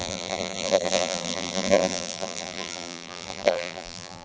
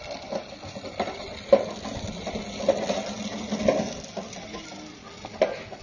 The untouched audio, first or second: second